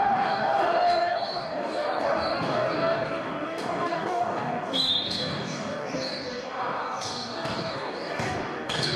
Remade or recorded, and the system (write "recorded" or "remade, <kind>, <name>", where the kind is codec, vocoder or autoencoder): remade, codec, DAC